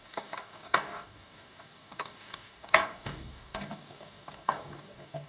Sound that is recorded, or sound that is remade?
remade